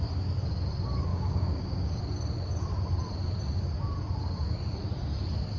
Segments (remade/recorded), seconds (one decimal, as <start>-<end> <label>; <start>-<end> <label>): 0.0-1.1 recorded; 1.1-2.0 remade; 2.0-5.6 recorded